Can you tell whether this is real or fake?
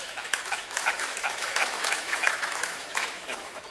fake